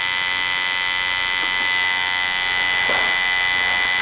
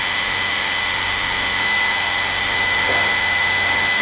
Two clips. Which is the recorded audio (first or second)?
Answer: first